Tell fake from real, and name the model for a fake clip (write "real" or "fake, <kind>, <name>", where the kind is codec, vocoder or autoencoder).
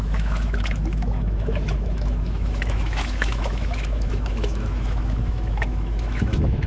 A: fake, autoencoder, DAC-VAE